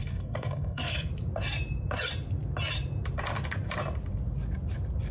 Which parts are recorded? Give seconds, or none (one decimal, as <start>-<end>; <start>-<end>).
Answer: 1.1-5.1